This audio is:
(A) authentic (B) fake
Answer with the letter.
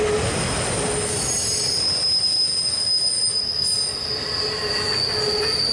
A